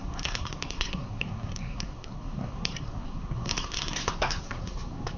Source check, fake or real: fake